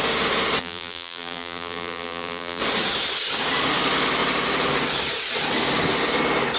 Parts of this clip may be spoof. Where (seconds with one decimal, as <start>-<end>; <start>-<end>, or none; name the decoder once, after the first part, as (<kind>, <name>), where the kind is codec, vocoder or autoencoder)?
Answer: 0.6-2.6 (vocoder, BigVGAN v2)